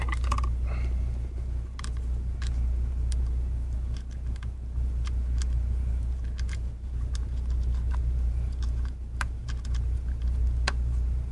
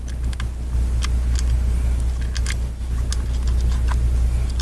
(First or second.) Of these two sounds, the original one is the second